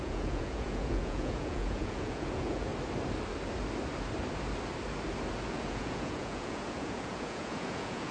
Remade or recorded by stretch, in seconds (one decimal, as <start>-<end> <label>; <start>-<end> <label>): 0.0-2.7 remade; 2.7-5.5 recorded; 5.5-8.1 remade